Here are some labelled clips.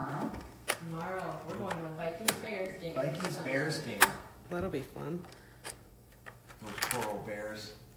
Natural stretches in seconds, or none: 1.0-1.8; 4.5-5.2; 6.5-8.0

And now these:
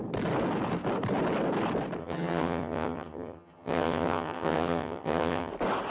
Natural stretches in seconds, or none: 0.0-2.0; 5.5-5.9